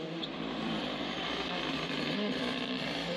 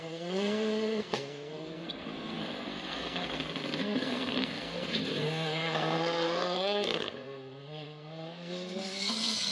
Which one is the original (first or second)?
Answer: first